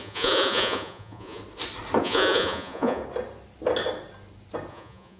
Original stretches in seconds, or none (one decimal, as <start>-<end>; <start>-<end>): 1.4-2.0; 3.0-4.7